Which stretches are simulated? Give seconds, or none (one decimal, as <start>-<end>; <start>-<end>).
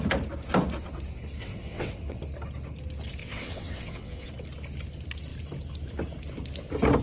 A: 1.4-2.2; 3.2-4.3